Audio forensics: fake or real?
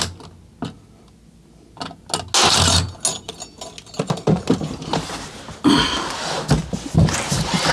real